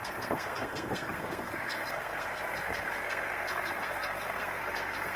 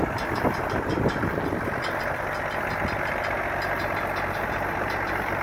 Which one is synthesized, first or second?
first